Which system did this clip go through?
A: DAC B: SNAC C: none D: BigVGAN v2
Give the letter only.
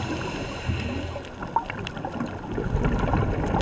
C